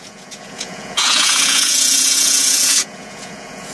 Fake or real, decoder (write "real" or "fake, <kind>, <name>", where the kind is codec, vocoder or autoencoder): fake, vocoder, Vocos